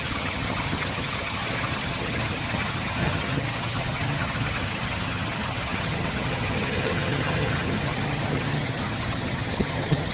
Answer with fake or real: fake